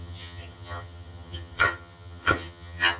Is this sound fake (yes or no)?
yes